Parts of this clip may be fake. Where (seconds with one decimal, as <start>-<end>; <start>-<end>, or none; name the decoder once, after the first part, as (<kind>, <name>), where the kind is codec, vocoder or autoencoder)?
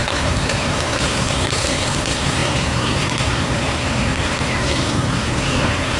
0.0-6.0 (codec, SNAC)